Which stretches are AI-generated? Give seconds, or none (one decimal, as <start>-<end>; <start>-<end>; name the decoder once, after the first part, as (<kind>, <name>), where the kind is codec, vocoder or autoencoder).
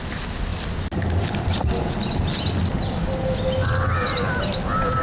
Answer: none